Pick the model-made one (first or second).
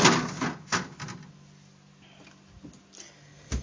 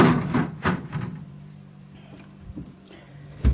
second